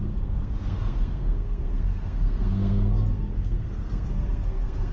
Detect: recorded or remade remade